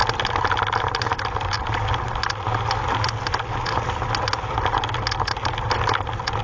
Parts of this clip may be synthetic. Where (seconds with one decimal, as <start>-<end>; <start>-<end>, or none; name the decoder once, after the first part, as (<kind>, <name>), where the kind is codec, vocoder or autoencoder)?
none